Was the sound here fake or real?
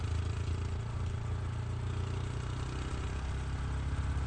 real